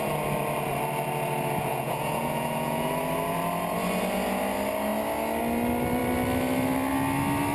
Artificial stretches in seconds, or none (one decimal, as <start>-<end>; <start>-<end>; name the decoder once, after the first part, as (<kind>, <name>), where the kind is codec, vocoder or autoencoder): 1.7-2.9 (vocoder, Vocos)